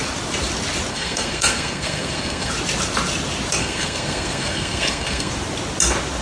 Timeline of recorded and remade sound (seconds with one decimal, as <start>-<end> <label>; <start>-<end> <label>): 0.0-0.9 recorded; 0.9-2.5 remade; 2.5-3.6 recorded; 3.6-5.3 remade; 5.3-6.2 recorded